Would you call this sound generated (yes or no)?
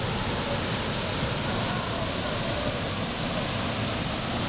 no